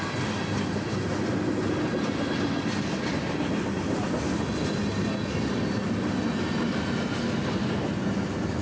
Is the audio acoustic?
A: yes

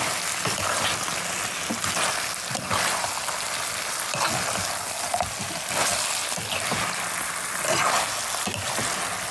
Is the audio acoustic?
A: yes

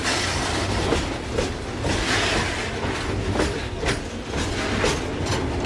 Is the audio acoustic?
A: yes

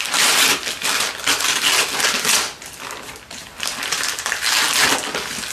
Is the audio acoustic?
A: yes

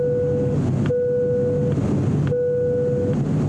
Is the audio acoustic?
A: yes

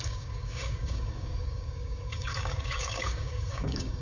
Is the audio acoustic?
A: no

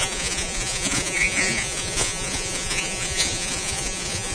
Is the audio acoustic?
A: no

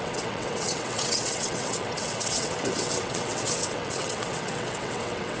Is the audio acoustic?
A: no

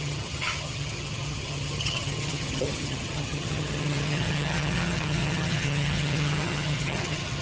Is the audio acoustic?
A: no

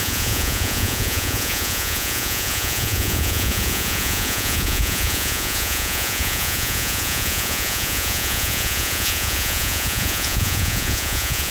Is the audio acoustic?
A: no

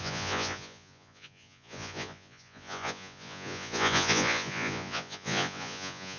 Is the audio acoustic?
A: no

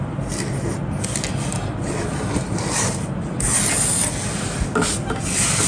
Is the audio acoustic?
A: yes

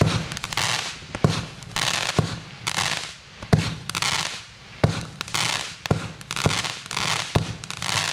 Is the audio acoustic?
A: yes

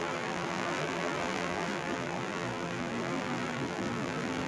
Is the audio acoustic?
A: no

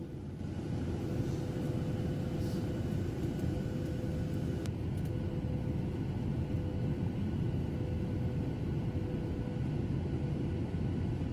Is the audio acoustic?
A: yes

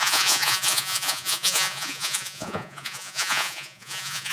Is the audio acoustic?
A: no